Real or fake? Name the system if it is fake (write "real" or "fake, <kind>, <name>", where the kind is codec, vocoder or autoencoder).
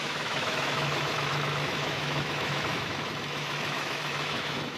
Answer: fake, autoencoder, DAC-VAE